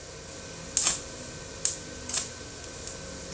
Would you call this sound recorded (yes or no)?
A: yes